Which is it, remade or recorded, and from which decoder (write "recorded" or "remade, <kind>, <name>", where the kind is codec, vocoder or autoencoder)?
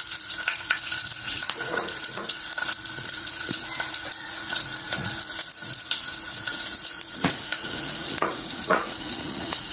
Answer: remade, vocoder, Vocos